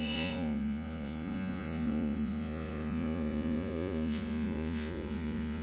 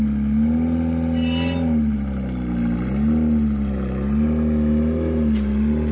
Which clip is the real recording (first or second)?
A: second